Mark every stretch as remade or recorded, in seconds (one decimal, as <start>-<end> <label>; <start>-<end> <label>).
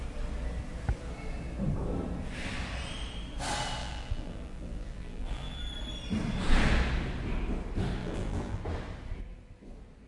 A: 0.0-3.8 recorded; 3.8-5.6 remade; 5.6-8.0 recorded; 8.0-8.6 remade; 8.6-10.1 recorded